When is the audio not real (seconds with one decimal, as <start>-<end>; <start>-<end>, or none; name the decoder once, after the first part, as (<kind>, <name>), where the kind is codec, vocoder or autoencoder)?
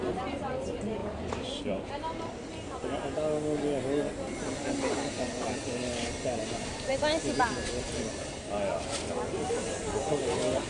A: 1.0-1.9 (vocoder, BigVGAN v2)